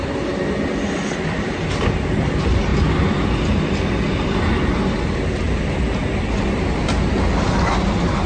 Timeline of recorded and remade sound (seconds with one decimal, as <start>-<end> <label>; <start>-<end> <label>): 0.0-8.3 recorded